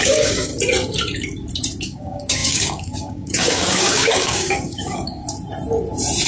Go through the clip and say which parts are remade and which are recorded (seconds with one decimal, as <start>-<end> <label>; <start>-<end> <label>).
0.0-0.5 remade; 0.5-1.8 recorded; 1.8-5.2 remade; 5.2-6.3 recorded